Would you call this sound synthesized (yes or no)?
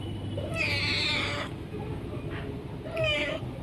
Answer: no